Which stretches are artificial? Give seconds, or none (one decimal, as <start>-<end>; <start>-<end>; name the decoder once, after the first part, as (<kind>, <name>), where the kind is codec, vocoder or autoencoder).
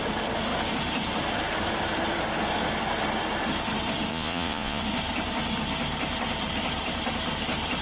4.1-4.8 (vocoder, Vocos)